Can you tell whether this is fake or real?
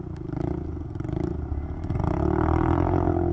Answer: real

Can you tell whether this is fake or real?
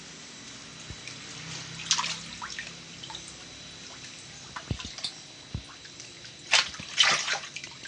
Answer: real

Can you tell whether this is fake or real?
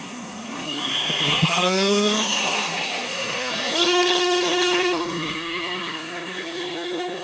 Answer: fake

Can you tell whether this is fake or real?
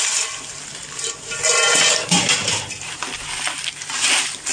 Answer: real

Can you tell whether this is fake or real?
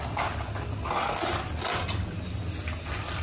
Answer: real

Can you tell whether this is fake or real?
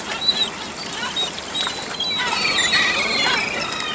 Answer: real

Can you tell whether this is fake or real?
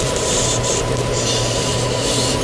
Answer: fake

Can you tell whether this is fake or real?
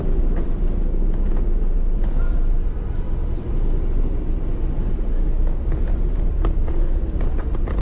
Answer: real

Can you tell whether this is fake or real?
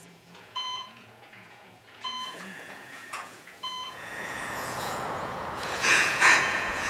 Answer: fake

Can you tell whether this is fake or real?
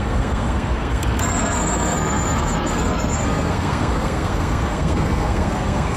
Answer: fake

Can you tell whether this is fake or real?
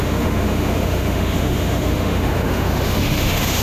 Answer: fake